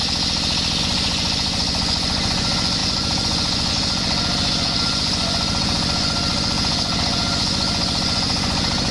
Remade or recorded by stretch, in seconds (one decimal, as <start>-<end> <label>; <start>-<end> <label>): 0.0-0.8 recorded; 0.8-8.9 remade